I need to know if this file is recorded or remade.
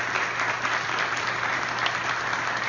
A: recorded